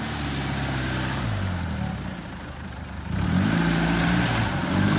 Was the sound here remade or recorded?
remade